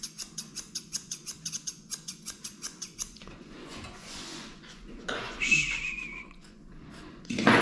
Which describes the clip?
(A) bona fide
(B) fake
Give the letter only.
B